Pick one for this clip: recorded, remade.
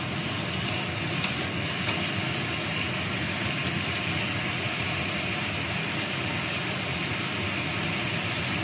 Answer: recorded